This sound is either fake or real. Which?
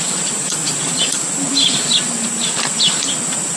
real